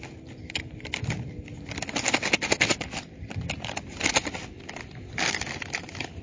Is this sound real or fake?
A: real